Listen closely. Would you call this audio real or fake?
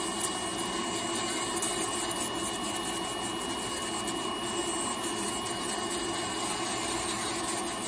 real